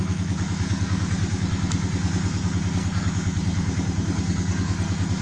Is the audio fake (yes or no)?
yes